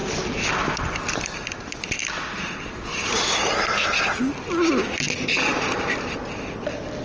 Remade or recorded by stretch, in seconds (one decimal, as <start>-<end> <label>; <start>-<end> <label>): 0.0-7.0 recorded

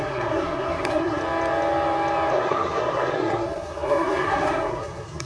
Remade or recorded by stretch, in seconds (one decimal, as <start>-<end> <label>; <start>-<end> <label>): 0.0-1.2 remade; 1.2-2.3 recorded; 2.3-5.3 remade

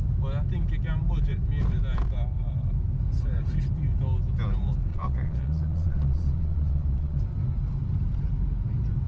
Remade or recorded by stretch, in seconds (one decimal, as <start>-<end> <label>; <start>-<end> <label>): 0.0-4.9 recorded; 4.9-7.2 remade; 7.2-9.1 recorded

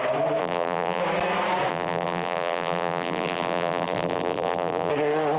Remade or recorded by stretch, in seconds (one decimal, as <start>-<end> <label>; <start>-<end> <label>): 0.0-0.4 recorded; 0.4-1.0 remade; 1.0-1.7 recorded; 1.7-4.9 remade; 4.9-5.4 recorded

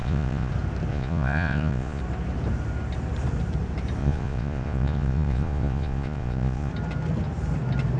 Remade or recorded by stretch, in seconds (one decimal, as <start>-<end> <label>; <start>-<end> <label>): 0.0-0.5 remade; 0.5-0.9 recorded; 0.9-2.0 remade; 2.0-4.0 recorded; 4.0-6.7 remade; 6.7-8.0 recorded